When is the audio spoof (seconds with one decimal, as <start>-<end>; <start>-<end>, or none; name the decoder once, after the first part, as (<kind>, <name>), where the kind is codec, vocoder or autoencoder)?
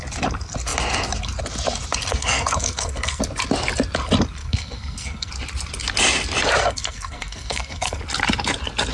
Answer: 2.1-3.2 (codec, SNAC); 4.4-5.3; 6.6-8.0